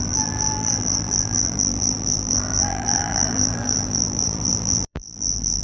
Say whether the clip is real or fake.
fake